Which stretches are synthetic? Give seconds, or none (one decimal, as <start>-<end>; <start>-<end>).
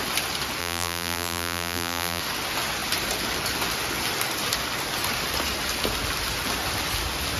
0.6-2.2